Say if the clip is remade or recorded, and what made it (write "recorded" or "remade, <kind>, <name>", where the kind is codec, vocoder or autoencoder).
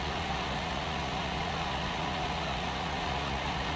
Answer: remade, vocoder, Vocos